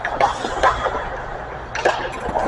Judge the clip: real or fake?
real